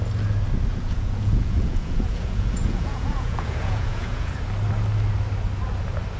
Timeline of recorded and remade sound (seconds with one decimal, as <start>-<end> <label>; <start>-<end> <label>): 0.0-0.7 recorded; 0.7-4.4 remade; 4.4-6.2 recorded

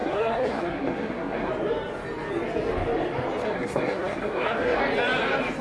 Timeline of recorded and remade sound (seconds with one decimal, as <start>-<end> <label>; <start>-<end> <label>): 0.0-1.5 remade; 1.5-3.4 recorded; 3.4-4.8 remade; 4.8-5.6 recorded

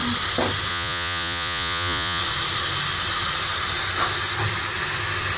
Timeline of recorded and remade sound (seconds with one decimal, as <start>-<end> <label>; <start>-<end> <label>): 0.0-0.7 recorded; 0.7-2.2 remade; 2.2-5.4 recorded

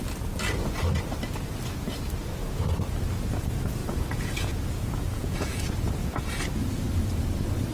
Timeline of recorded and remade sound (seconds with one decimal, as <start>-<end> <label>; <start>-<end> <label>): 0.0-3.8 recorded; 3.8-6.1 remade; 6.1-7.7 recorded

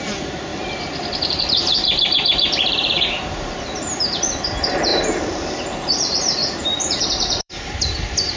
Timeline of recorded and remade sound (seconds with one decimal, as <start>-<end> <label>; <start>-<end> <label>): 0.0-0.5 remade; 0.5-1.3 recorded; 1.3-8.4 remade

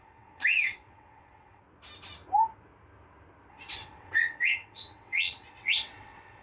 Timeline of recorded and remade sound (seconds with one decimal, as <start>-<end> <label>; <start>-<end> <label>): 0.0-1.6 remade; 1.6-3.5 recorded; 3.5-6.4 remade